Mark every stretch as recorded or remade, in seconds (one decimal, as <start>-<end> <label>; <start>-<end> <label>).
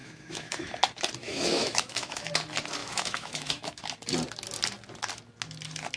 0.0-0.7 remade; 0.7-1.2 recorded; 1.2-2.3 remade; 2.3-2.8 recorded; 2.8-3.8 remade; 3.8-6.0 recorded